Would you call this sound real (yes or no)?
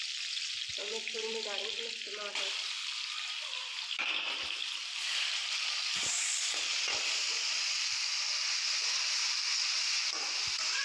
no